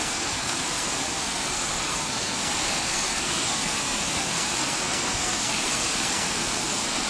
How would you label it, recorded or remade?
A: remade